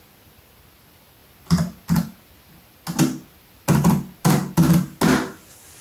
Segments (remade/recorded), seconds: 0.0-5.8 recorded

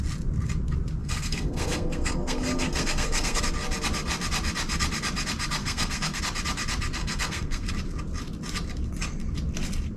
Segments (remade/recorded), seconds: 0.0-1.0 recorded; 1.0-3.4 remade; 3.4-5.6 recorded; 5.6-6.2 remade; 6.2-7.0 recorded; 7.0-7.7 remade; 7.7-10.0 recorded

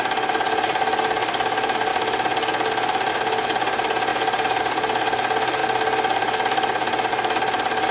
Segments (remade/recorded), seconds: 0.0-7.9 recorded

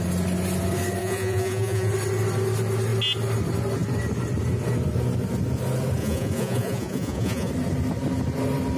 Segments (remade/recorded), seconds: 0.0-1.0 recorded; 1.0-1.9 remade; 1.9-6.0 recorded; 6.0-7.5 remade; 7.5-8.8 recorded

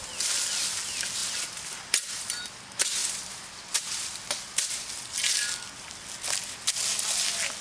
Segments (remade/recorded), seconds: 0.0-7.6 recorded

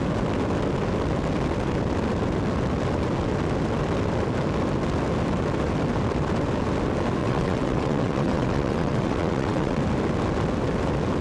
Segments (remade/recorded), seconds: 0.0-7.2 recorded; 7.2-9.8 remade; 9.8-11.2 recorded

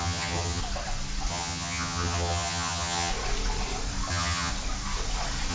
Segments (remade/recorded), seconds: 0.0-0.6 remade; 0.6-1.3 recorded; 1.3-3.1 remade; 3.1-4.1 recorded; 4.1-4.5 remade; 4.5-5.5 recorded